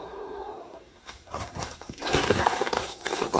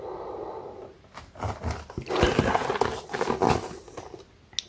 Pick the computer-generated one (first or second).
first